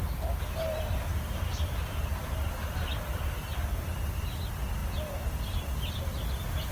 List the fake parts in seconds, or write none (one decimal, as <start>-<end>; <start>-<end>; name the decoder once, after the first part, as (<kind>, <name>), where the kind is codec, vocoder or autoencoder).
none